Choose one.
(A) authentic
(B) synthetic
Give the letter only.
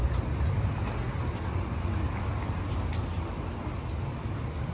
A